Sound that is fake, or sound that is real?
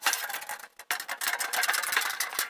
real